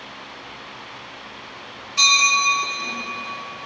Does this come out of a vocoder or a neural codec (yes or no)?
no